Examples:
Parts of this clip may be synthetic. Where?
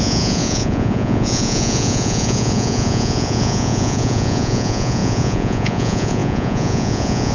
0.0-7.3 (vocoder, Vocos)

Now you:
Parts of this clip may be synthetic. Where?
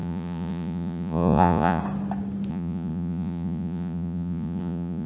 0.0-1.8 (vocoder, Vocos); 2.5-5.1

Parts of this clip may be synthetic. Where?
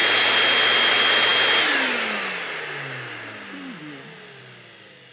none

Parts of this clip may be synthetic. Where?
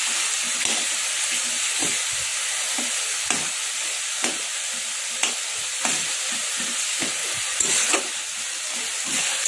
none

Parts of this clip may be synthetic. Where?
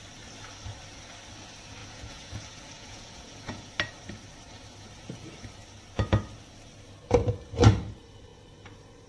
1.8-3.7 (vocoder, Vocos)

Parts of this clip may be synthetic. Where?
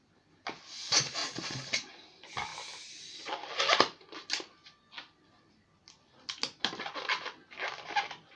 none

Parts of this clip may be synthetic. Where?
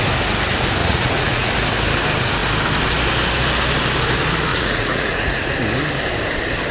0.8-1.5 (vocoder, Vocos); 4.5-5.5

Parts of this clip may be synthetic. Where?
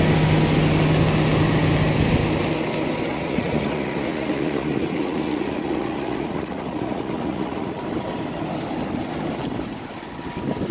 3.1-7.8 (vocoder, Vocos)